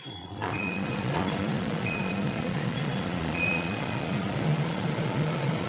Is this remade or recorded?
remade